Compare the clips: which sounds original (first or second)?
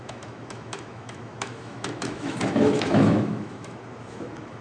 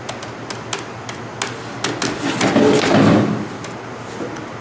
second